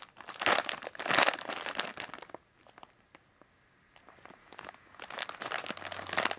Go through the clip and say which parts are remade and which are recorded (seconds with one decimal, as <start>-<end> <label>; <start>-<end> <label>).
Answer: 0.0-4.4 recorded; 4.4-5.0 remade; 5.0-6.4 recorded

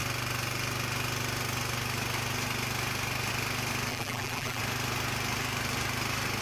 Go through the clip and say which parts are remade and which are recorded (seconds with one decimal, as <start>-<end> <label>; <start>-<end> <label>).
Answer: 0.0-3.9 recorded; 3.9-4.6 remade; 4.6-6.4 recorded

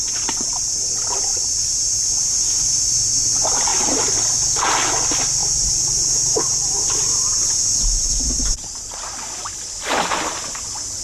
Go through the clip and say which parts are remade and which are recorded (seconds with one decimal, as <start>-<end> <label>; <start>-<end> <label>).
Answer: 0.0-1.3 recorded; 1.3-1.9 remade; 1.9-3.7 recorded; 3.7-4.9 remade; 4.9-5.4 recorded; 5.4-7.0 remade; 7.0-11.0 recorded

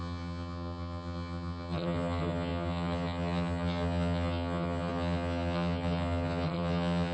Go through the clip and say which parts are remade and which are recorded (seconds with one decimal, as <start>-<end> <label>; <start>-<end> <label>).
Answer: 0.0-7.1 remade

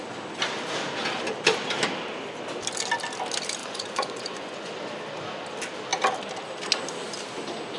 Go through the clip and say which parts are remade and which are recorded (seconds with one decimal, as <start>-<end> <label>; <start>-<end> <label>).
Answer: 0.0-3.6 recorded; 3.6-4.7 remade; 4.7-7.8 recorded

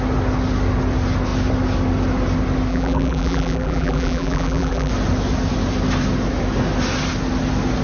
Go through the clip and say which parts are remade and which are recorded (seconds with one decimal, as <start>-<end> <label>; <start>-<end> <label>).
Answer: 0.0-2.7 recorded; 2.7-4.9 remade; 4.9-7.8 recorded

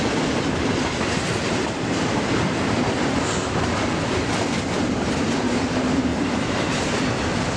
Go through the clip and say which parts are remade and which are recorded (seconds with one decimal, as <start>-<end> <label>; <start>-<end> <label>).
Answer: 0.0-7.6 remade

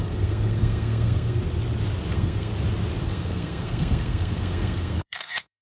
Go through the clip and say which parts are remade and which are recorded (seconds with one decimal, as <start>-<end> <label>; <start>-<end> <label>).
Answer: 0.0-1.4 remade; 1.4-2.1 recorded; 2.1-2.5 remade; 2.5-3.0 recorded; 3.0-5.6 remade